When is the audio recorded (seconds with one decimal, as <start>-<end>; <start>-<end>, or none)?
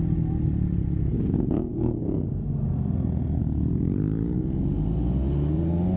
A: 0.0-1.7; 3.4-6.0